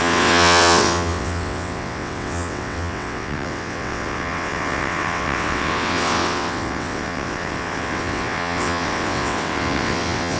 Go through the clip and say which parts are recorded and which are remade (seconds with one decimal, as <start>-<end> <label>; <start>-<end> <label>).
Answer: 0.0-10.4 remade